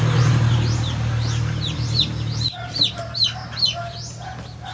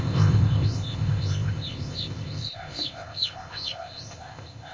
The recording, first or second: first